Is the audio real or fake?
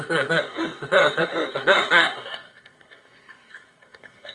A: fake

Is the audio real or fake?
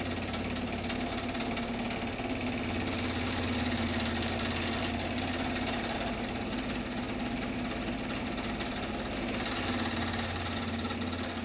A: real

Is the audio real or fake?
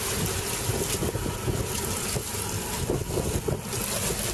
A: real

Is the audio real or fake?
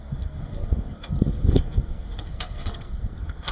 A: fake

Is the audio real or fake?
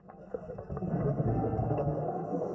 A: fake